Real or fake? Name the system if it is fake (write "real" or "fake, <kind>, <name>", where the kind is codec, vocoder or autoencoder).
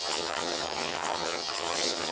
fake, vocoder, HiFi-GAN